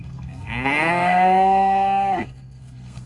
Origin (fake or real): fake